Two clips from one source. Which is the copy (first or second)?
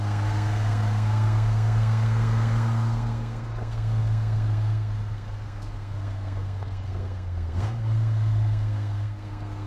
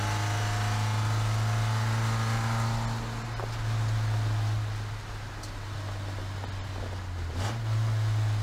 first